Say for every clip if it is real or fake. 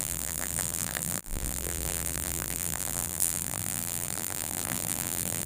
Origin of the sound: fake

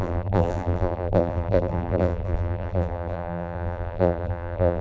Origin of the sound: fake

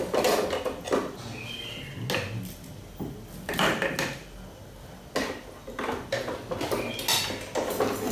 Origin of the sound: real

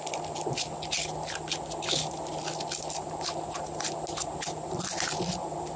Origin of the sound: real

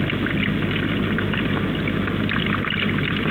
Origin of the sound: real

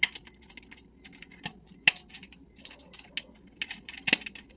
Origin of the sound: real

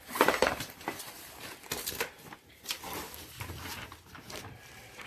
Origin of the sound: fake